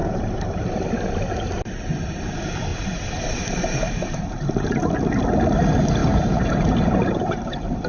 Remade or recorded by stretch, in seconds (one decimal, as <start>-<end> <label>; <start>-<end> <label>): 0.0-1.1 remade; 1.1-2.7 recorded; 2.7-4.7 remade; 4.7-6.0 recorded; 6.0-7.9 remade